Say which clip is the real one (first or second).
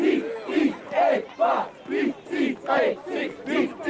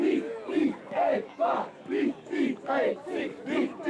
first